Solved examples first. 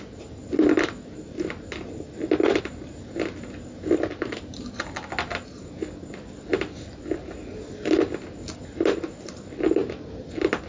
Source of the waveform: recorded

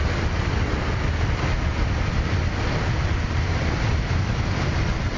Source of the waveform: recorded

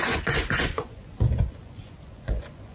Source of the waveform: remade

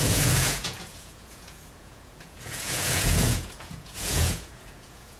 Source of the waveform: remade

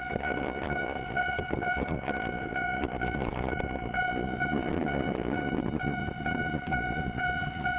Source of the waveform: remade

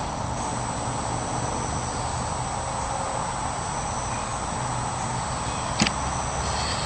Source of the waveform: recorded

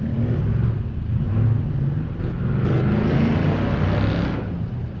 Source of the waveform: recorded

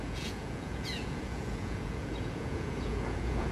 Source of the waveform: remade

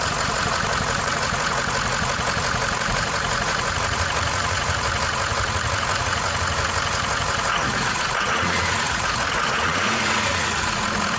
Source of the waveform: remade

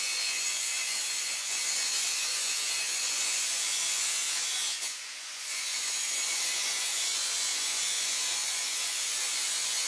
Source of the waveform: remade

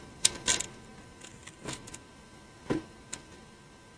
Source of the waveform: recorded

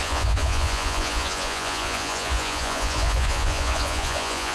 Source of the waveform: remade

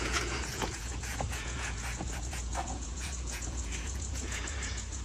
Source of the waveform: remade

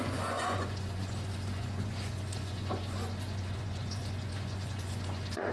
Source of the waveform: remade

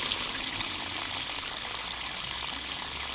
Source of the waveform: recorded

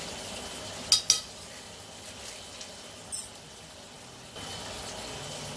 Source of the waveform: recorded